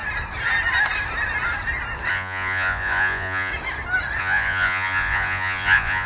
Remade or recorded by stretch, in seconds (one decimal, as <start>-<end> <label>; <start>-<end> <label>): 0.0-2.1 recorded; 2.1-3.5 remade; 3.5-4.2 recorded; 4.2-6.1 remade